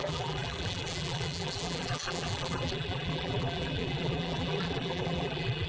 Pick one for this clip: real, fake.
fake